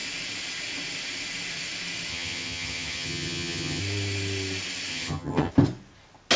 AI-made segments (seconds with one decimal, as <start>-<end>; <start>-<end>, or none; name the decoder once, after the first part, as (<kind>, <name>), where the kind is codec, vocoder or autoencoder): 2.1-3.8 (vocoder, HiFi-GAN); 4.9-5.5

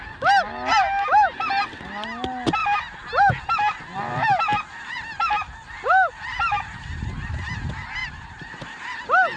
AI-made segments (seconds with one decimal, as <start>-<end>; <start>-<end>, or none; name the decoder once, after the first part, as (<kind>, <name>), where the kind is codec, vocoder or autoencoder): 8.0-8.6 (vocoder, BigVGAN v2)

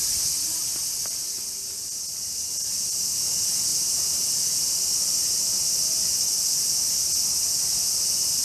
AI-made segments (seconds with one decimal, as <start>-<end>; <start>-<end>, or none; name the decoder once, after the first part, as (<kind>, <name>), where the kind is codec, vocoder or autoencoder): none